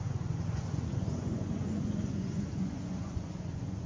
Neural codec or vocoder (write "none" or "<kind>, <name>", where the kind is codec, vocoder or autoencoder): vocoder, Vocos